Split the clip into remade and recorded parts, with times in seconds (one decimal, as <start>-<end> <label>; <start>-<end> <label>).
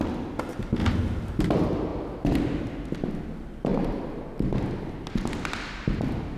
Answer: 0.0-3.7 recorded; 3.7-4.2 remade; 4.2-6.4 recorded